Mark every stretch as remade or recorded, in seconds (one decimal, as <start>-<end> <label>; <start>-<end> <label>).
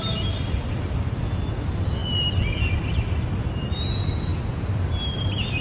0.0-5.6 recorded